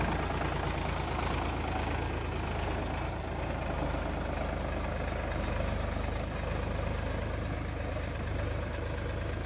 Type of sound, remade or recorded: recorded